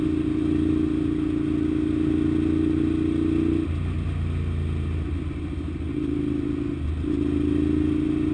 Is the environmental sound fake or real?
real